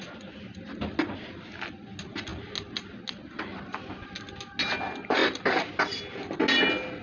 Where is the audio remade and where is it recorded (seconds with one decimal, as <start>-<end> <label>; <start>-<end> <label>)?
0.0-7.0 recorded